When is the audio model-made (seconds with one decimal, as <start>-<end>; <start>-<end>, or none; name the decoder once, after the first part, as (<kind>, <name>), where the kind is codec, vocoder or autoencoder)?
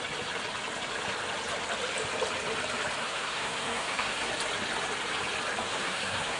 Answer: 3.0-4.3 (codec, SNAC); 5.6-6.4